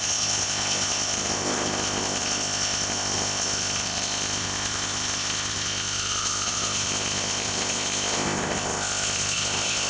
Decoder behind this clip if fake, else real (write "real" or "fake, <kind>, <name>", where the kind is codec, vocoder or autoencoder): fake, codec, ZipCodec